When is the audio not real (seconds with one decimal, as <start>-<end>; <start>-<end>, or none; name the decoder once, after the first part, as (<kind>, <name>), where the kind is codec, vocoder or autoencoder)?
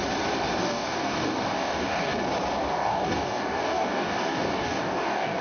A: 0.6-2.1 (codec, DAC); 2.7-5.4